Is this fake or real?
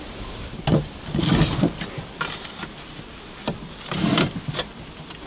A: real